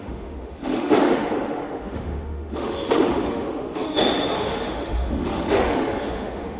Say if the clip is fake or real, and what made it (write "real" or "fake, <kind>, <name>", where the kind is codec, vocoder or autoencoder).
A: fake, autoencoder, DAC-VAE